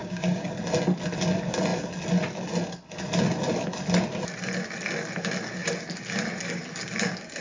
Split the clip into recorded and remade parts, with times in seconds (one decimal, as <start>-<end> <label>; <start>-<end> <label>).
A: 0.0-0.5 remade; 0.5-7.4 recorded